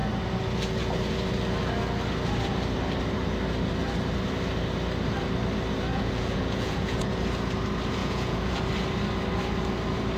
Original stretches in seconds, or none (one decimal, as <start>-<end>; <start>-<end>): 0.0-5.9; 7.2-8.0; 8.6-10.2